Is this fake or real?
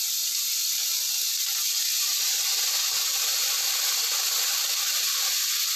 real